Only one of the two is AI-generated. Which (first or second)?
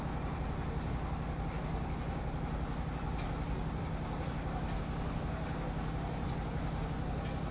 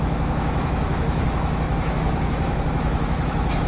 second